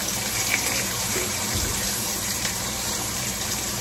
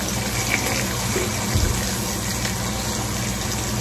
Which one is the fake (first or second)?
first